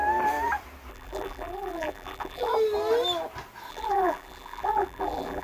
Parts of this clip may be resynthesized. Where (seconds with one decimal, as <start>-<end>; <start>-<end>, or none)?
0.9-2.5; 3.7-5.4